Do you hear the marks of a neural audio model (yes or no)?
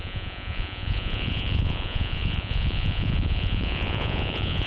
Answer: yes